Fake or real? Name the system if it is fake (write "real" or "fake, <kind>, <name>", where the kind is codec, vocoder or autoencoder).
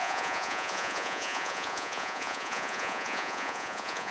fake, vocoder, Vocos